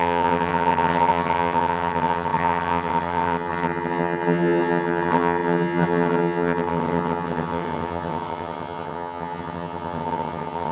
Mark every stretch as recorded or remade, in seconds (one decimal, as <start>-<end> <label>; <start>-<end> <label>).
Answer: 0.0-10.7 remade